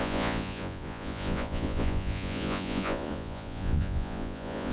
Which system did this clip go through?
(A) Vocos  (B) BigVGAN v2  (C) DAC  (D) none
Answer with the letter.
A